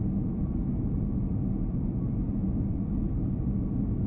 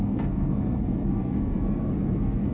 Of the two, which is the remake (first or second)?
second